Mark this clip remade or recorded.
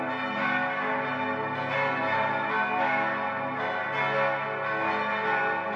recorded